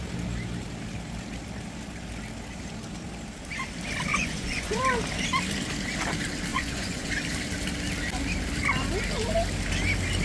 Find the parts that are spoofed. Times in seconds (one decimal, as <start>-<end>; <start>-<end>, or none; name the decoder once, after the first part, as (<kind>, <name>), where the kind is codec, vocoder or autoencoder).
4.1-4.8 (vocoder, Vocos); 6.5-7.1